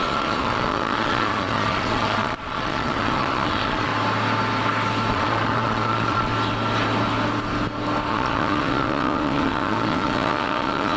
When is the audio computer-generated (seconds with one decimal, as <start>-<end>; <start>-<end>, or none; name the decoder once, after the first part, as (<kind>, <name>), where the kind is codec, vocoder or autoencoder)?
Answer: 0.0-3.9 (vocoder, Vocos); 5.1-6.3; 8.1-11.0